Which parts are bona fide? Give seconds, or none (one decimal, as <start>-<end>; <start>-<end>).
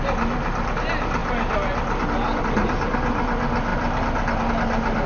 0.0-5.1